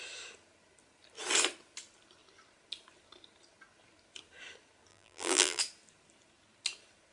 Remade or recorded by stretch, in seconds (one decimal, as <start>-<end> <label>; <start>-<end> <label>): 0.0-4.9 recorded; 4.9-5.6 remade; 5.6-7.1 recorded